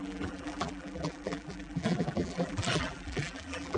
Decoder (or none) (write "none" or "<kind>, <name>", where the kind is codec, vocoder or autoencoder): vocoder, BigVGAN v2